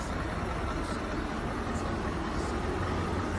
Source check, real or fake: real